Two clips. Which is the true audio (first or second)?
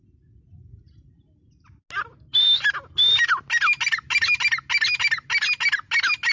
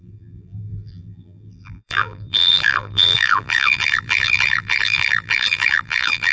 first